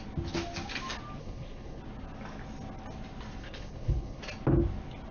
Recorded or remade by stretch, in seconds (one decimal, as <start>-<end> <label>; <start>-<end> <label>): 0.0-1.2 recorded; 1.2-1.8 remade; 1.8-3.4 recorded; 3.4-4.2 remade; 4.2-5.1 recorded